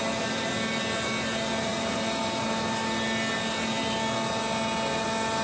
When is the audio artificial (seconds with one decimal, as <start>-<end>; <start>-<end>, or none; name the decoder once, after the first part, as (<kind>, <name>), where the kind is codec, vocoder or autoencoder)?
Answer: none